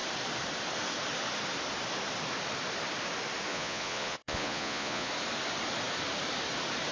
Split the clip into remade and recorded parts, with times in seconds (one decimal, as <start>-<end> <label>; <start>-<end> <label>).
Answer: 0.0-3.5 recorded; 3.5-5.1 remade; 5.1-6.9 recorded